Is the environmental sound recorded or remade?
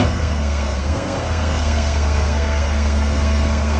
remade